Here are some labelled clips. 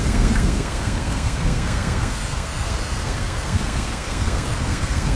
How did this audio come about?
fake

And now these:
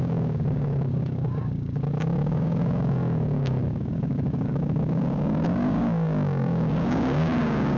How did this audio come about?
fake